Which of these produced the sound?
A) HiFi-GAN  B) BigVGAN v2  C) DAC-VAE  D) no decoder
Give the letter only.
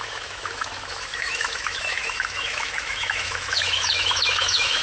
C